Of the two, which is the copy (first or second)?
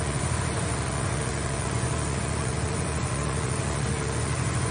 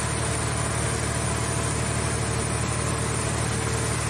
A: first